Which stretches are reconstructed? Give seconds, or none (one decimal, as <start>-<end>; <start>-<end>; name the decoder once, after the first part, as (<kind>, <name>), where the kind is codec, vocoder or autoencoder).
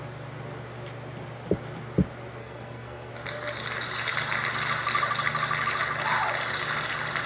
2.4-3.1 (codec, SNAC)